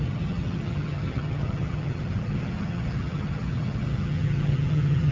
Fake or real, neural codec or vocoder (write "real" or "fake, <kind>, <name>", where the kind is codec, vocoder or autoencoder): fake, vocoder, HiFi-GAN